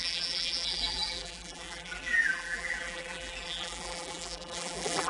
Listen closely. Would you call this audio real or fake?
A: fake